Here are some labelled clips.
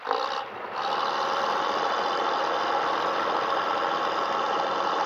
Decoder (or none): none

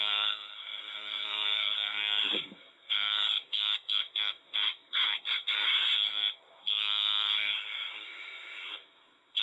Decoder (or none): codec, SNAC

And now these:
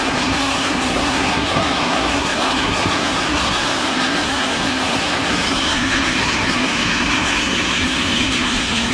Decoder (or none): codec, SNAC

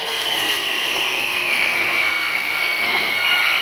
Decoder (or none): codec, SNAC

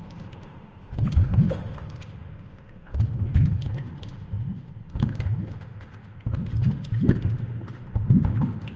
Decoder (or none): autoencoder, DAC-VAE